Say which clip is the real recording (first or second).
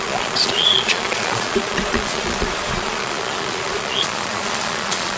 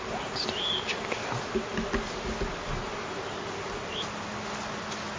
second